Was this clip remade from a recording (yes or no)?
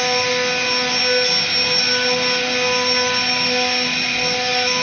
no